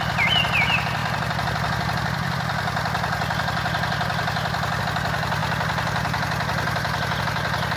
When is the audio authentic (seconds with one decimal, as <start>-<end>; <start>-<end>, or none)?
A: 0.0-7.8